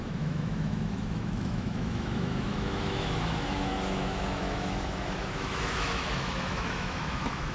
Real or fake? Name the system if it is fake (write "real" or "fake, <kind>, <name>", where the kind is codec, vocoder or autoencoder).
fake, autoencoder, DAC-VAE